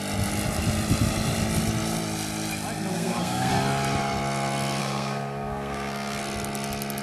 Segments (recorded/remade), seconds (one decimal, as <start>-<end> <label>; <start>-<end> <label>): 0.0-2.9 recorded; 2.9-3.5 remade; 3.5-4.8 recorded; 4.8-6.2 remade; 6.2-7.0 recorded